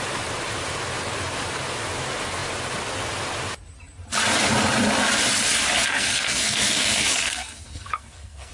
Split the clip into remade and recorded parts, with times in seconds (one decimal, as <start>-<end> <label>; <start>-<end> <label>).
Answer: 0.0-5.8 recorded; 5.8-8.5 remade